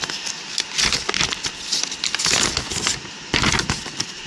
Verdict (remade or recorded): recorded